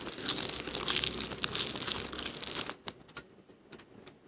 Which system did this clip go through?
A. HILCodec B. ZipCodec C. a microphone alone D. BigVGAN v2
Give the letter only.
C